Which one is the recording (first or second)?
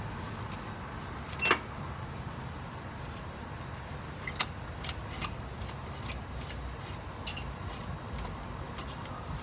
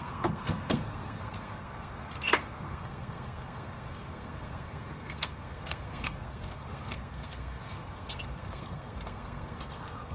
first